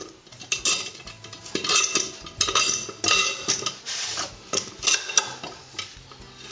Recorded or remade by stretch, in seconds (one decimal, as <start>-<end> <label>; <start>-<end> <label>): 0.0-6.5 recorded

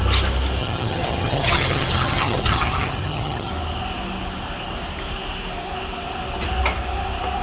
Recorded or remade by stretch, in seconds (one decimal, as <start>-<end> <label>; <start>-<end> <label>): 0.0-0.6 recorded; 0.6-3.5 remade; 3.5-7.4 recorded